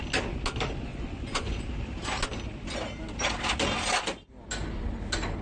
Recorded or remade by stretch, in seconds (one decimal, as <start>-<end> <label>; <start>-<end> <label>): 0.0-0.9 recorded; 0.9-1.6 remade; 1.6-5.4 recorded